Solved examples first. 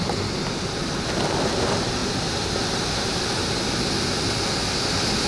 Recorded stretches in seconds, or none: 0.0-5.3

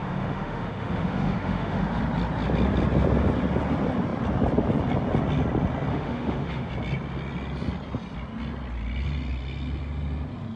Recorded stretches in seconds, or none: 2.0-5.9; 6.7-10.6

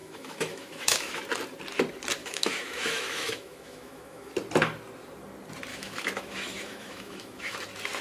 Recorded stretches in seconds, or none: 1.2-2.2; 4.3-5.7; 7.6-8.0

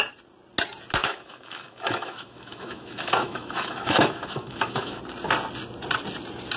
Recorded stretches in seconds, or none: 0.0-1.0; 5.0-6.6